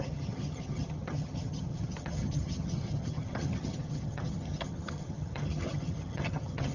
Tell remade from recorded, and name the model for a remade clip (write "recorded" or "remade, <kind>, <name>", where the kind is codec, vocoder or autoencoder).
remade, vocoder, HiFi-GAN